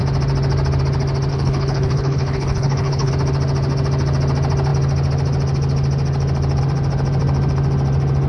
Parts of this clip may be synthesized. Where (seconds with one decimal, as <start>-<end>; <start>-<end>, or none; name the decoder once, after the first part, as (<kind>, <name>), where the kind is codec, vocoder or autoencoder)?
1.3-3.1 (codec, HILCodec)